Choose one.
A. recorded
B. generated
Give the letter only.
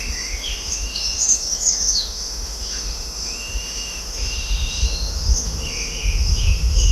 B